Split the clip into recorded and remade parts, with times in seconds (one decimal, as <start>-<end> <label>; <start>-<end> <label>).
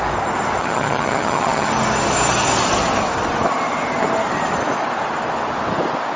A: 0.0-0.6 recorded; 0.6-1.7 remade; 1.7-6.2 recorded